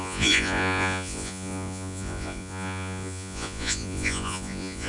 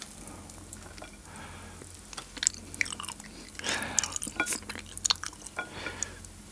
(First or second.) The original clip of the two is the second